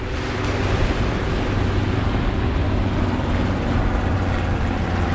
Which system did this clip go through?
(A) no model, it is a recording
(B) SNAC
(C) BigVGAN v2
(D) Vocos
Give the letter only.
A